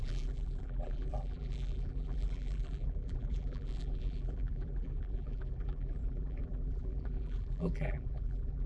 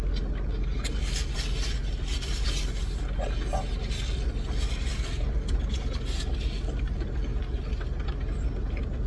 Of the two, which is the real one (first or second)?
second